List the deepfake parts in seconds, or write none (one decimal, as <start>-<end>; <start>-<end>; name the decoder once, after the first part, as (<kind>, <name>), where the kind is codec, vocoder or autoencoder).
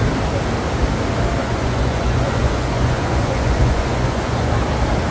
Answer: 1.4-4.5 (vocoder, Vocos)